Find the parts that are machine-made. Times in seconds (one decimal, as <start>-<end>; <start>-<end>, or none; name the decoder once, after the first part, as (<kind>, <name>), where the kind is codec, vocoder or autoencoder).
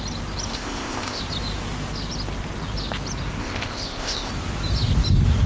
0.5-1.2 (codec, ZipCodec); 3.4-4.3